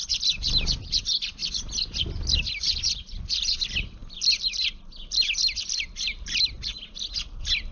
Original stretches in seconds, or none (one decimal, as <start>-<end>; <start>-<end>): 1.4-2.0; 6.7-7.7